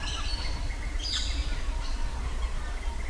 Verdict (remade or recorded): recorded